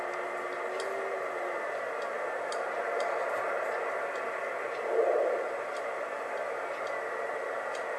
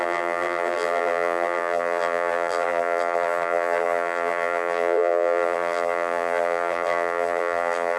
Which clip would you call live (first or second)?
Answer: first